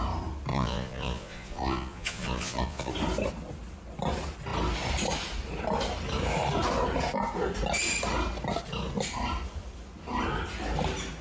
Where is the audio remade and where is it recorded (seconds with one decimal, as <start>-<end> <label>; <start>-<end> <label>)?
0.0-0.5 recorded; 0.5-2.9 remade; 2.9-11.2 recorded